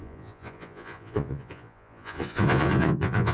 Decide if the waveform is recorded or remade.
remade